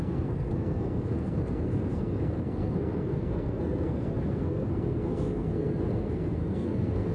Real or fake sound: fake